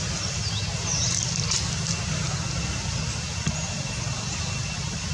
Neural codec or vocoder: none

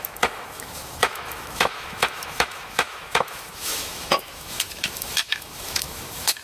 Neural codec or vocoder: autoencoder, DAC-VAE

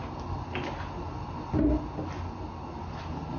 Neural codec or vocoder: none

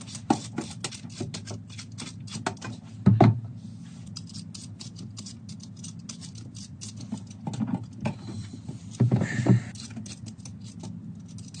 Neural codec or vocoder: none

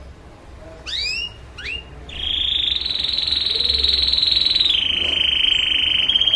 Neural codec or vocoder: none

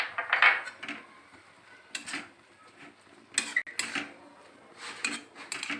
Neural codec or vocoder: none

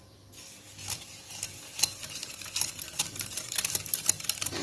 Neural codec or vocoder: none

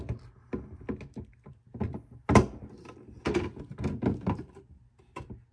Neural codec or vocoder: none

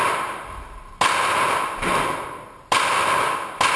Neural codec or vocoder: none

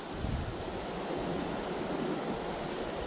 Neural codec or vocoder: none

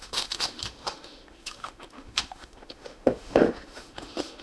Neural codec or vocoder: autoencoder, DAC-VAE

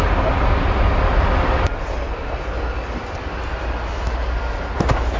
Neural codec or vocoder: none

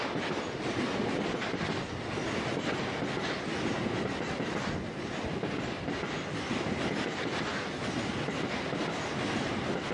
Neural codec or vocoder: none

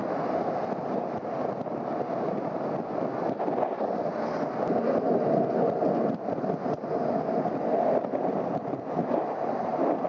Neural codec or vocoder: none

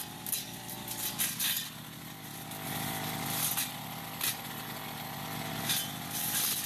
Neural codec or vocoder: none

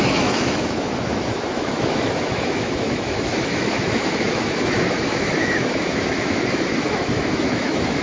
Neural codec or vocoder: autoencoder, DAC-VAE